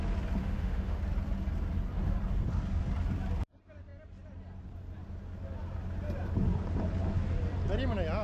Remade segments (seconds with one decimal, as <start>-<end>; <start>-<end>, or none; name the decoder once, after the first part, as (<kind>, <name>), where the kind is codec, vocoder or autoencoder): 0.4-1.0 (autoencoder, DAC-VAE)